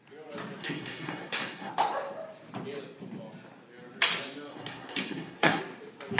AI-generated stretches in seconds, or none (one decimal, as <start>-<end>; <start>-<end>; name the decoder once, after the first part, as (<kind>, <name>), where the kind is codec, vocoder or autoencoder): 0.6-1.7 (codec, SNAC); 4.5-5.6